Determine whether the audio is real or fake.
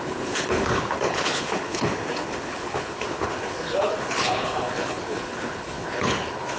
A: fake